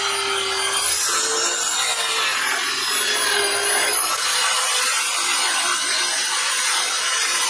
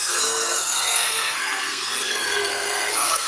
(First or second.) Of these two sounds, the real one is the first